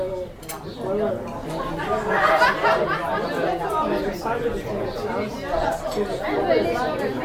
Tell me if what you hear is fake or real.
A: real